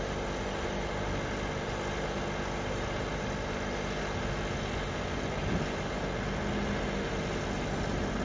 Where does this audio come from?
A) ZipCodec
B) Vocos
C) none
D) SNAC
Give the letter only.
C